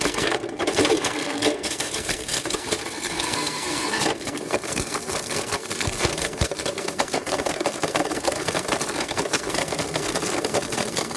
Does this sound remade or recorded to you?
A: remade